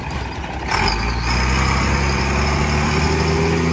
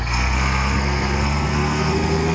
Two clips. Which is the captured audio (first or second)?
first